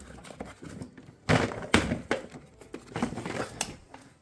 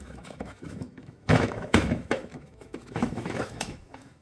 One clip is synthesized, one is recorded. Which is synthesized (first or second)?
second